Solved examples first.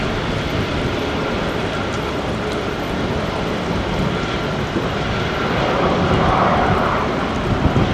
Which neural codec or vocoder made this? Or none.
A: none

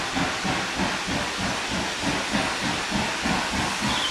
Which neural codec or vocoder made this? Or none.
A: none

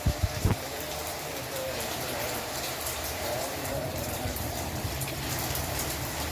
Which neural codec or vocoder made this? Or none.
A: vocoder, BigVGAN v2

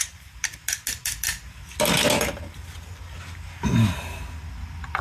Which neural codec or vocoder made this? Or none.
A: none